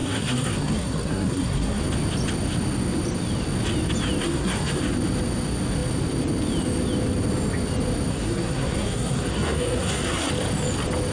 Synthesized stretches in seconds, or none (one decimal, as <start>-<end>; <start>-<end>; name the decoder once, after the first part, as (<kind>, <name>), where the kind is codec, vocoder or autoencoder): 0.0-1.8 (codec, SNAC); 4.2-4.8; 8.1-10.3